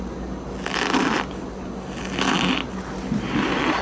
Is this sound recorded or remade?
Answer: recorded